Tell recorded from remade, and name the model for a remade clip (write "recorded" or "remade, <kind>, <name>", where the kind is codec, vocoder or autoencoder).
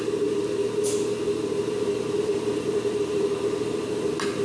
recorded